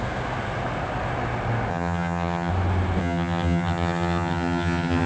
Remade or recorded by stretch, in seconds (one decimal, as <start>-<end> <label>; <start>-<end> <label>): 0.0-1.7 recorded; 1.7-2.5 remade; 2.5-3.0 recorded; 3.0-5.1 remade